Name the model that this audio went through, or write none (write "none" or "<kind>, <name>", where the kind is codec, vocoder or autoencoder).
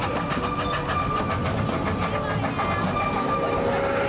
none